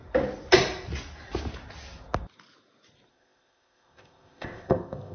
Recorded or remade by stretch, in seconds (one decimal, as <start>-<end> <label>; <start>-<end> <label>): 0.0-3.1 recorded; 3.1-5.1 remade

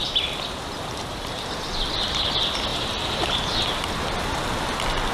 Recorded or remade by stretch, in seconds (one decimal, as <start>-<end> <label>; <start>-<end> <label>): 0.0-0.5 remade; 0.5-2.7 recorded; 2.7-3.6 remade; 3.6-5.1 recorded

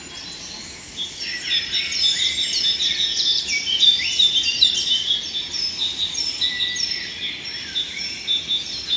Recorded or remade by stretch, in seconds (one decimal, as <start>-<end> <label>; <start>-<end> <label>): 0.0-9.0 recorded

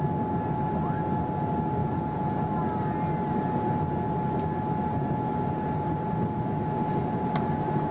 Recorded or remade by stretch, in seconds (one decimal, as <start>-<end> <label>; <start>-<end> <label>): 0.0-1.8 recorded; 1.8-2.4 remade; 2.4-7.9 recorded